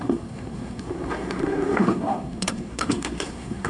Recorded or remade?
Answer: remade